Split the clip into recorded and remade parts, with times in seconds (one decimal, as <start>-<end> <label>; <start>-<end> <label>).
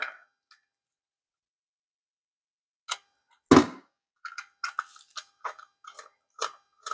0.0-3.6 recorded; 3.6-4.4 remade; 4.4-6.9 recorded